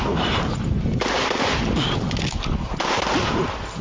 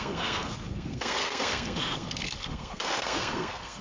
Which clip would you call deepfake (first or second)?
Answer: second